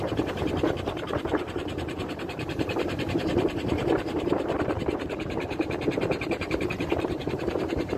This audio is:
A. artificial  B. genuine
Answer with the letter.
A